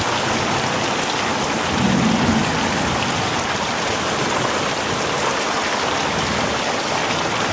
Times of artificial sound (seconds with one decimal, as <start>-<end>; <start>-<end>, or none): none